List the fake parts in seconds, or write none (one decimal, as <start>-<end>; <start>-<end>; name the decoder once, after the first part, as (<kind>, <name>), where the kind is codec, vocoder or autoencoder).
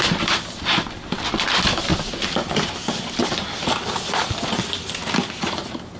none